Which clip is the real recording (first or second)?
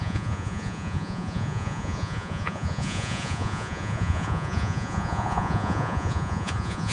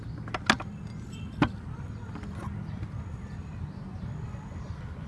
second